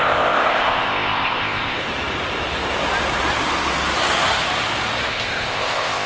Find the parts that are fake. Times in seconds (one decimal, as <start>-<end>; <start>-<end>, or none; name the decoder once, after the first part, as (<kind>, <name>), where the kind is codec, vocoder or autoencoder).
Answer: 0.0-1.8 (codec, ZipCodec); 5.1-6.1